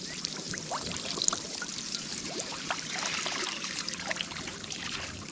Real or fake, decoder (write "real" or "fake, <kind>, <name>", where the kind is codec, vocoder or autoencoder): fake, vocoder, BigVGAN v2